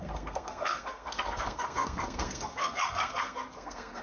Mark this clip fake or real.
fake